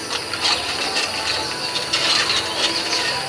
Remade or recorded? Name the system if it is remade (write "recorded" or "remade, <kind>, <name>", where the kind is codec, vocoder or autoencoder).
recorded